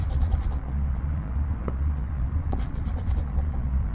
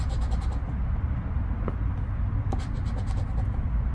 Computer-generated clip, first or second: first